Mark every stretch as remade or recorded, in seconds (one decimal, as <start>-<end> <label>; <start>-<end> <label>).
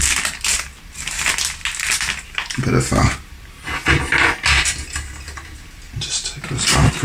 0.0-7.0 recorded